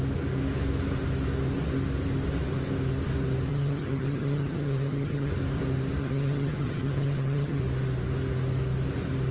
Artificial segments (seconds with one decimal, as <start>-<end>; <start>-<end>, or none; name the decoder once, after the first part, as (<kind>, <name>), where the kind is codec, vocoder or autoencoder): 3.5-5.3 (vocoder, HiFi-GAN); 6.0-7.6